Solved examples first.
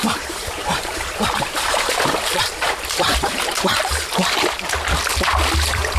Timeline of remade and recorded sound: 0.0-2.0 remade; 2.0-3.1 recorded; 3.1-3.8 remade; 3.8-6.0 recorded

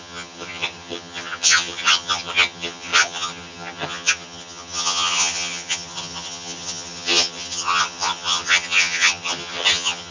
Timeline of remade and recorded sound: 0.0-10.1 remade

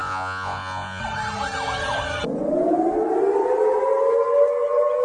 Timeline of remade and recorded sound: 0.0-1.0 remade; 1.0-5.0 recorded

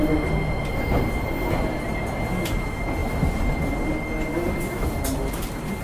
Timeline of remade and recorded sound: 0.0-3.0 recorded; 3.0-3.7 remade; 3.7-5.8 recorded

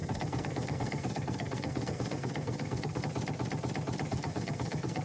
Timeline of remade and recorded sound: 0.0-3.0 remade; 3.0-4.1 recorded; 4.1-5.0 remade

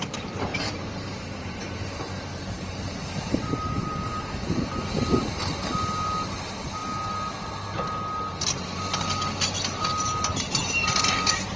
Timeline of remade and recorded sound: 0.0-0.5 recorded; 0.5-4.8 remade; 4.8-11.6 recorded

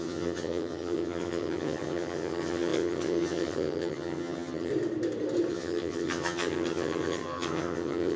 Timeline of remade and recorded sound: 0.0-4.7 remade; 4.7-5.5 recorded; 5.5-8.2 remade

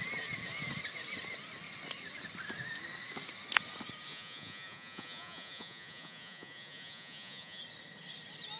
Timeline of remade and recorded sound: 0.0-4.1 recorded; 4.1-7.6 remade; 7.6-8.6 recorded